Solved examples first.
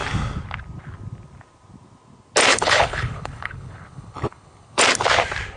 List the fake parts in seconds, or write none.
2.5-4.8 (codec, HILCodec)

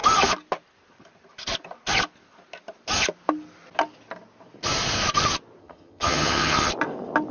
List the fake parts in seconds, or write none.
5.6-6.7 (vocoder, HiFi-GAN)

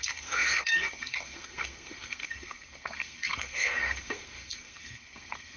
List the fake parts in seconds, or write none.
0.0-5.6 (codec, SNAC)

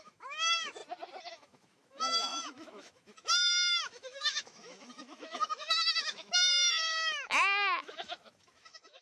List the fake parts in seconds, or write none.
0.0-0.8 (autoencoder, DAC-VAE); 1.3-9.0

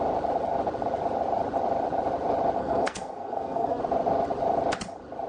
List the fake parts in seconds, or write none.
2.6-3.8 (codec, SNAC)